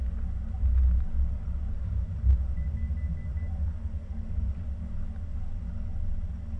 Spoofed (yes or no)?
no